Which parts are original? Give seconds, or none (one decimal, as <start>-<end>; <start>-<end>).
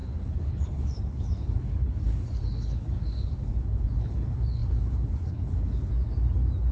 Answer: 5.9-6.7